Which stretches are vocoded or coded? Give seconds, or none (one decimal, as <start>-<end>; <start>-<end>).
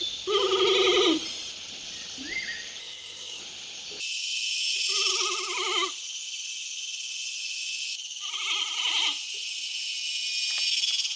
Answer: 2.8-3.4